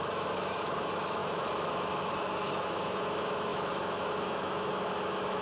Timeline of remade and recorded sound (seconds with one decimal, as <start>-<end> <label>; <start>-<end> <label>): 0.0-5.4 remade